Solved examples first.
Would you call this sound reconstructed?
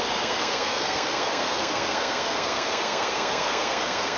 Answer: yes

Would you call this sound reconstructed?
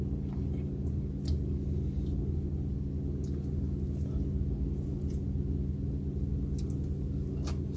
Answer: no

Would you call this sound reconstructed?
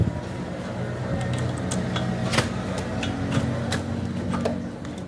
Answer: no